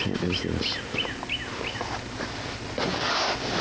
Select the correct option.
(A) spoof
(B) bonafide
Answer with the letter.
B